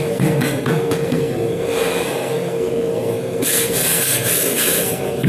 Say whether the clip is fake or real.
fake